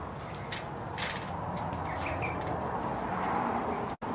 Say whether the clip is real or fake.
real